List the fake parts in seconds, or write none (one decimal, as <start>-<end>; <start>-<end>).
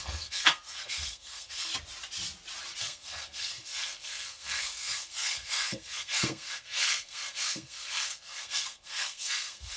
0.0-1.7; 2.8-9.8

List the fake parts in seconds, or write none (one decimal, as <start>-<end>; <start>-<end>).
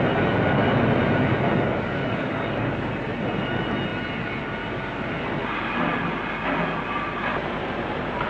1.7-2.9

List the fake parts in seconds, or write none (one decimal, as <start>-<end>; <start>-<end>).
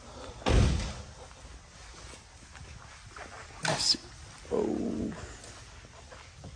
none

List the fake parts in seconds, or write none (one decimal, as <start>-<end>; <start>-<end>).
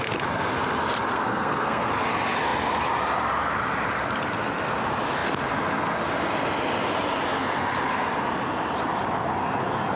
1.1-1.9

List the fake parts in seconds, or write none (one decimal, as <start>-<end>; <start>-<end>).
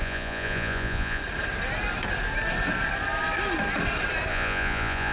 0.0-1.2; 4.3-5.1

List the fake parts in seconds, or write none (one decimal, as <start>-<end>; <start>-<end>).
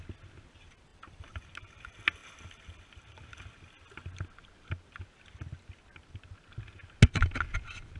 0.9-1.5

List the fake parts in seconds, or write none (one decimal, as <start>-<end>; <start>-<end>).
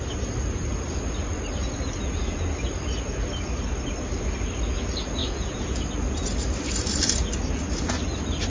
5.2-5.8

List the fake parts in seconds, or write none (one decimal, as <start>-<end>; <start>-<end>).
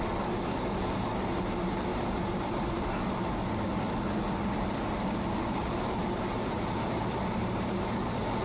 1.9-2.7; 5.6-8.4